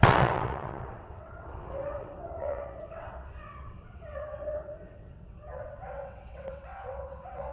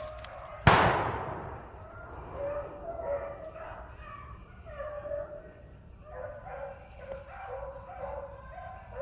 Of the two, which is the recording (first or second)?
second